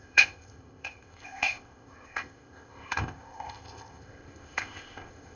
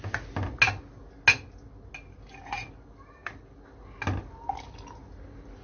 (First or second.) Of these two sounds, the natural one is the second